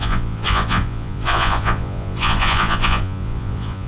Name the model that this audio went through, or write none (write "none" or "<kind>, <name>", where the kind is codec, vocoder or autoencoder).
vocoder, Vocos